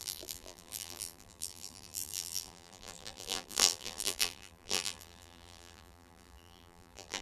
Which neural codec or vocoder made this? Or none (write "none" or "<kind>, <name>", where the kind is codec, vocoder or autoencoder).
vocoder, BigVGAN v2